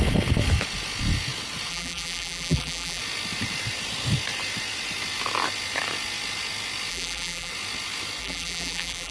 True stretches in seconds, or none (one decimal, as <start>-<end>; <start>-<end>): 0.0-1.7; 3.0-6.9; 7.5-8.2